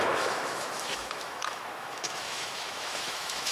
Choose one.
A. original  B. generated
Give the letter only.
B